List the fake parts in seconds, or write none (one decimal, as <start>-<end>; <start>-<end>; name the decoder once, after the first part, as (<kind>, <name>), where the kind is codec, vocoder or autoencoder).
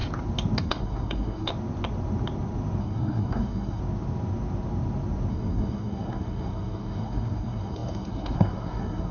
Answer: 0.6-1.5 (codec, SNAC); 2.8-3.8; 5.3-9.1